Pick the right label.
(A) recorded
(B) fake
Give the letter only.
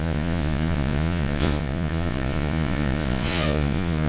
B